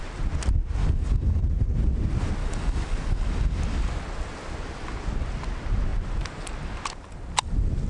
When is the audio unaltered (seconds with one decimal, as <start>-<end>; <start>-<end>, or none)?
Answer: 0.0-0.8; 1.4-2.4; 4.0-7.9